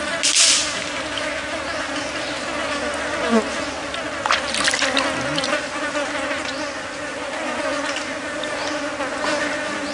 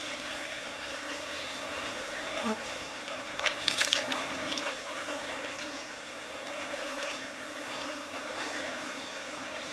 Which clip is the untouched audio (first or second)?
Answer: first